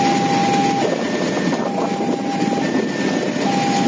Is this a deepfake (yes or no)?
no